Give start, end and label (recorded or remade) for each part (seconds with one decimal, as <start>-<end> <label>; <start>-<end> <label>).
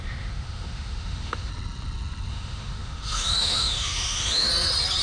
0.0-1.5 remade; 1.5-2.3 recorded; 2.3-4.5 remade; 4.5-5.0 recorded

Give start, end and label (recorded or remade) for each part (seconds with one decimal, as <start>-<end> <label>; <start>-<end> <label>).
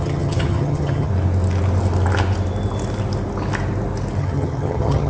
0.0-1.1 remade; 1.1-4.2 recorded; 4.2-5.1 remade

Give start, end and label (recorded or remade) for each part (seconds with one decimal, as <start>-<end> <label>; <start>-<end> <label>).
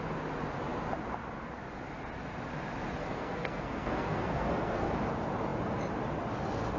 0.0-3.0 recorded; 3.0-4.9 remade; 4.9-6.8 recorded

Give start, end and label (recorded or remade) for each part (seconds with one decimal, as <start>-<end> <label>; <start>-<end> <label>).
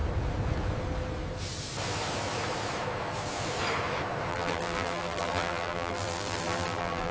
0.0-4.3 recorded; 4.3-7.1 remade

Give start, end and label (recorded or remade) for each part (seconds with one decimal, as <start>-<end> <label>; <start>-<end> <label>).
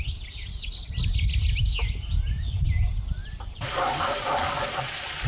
0.0-3.2 recorded; 3.2-4.0 remade; 4.0-5.3 recorded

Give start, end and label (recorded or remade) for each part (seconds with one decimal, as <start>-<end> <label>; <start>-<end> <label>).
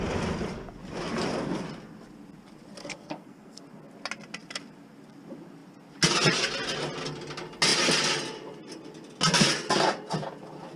0.0-2.8 recorded; 2.8-3.6 remade; 3.6-10.8 recorded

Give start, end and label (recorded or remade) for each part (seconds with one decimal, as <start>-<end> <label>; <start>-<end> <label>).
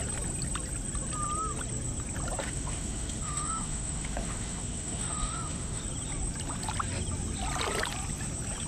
0.0-2.4 recorded; 2.4-5.8 remade; 5.8-8.7 recorded